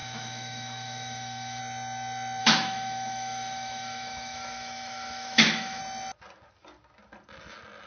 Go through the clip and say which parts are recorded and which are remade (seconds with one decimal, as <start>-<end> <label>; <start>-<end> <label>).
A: 0.0-1.6 remade; 1.6-2.4 recorded; 2.4-5.8 remade; 5.8-7.9 recorded